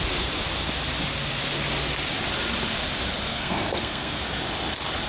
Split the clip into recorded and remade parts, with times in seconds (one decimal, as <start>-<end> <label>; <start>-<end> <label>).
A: 0.0-3.3 recorded; 3.3-4.2 remade; 4.2-5.1 recorded